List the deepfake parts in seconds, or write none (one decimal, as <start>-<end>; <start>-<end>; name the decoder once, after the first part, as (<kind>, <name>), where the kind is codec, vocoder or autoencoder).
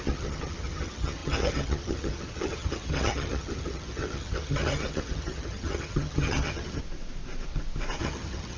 0.0-6.8 (vocoder, HiFi-GAN); 8.0-8.6